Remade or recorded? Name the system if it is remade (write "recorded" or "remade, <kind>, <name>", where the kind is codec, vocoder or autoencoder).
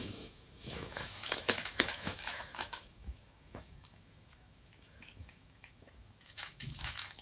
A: remade, autoencoder, DAC-VAE